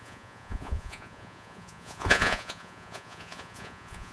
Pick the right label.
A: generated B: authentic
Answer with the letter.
A